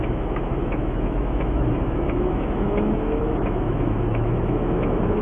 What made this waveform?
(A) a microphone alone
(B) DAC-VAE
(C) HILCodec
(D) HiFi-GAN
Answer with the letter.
B